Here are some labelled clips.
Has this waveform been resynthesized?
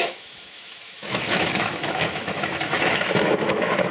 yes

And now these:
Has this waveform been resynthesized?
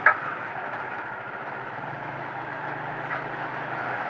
yes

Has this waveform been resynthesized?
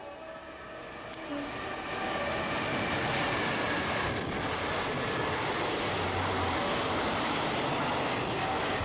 no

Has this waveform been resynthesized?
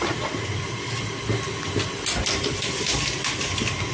no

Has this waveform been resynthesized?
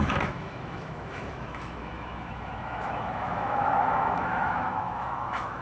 yes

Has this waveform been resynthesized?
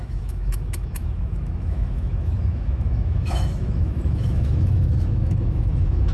yes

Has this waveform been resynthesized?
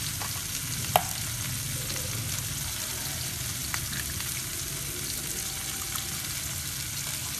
no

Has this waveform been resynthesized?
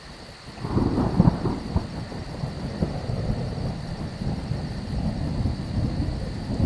no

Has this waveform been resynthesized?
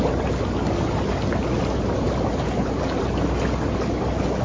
no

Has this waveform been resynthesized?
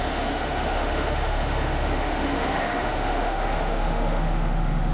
yes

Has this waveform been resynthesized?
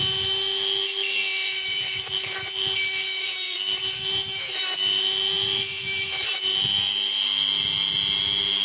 yes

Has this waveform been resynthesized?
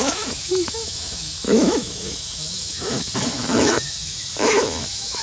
yes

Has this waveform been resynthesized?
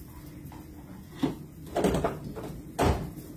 no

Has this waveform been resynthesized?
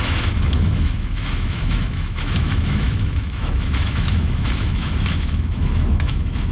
yes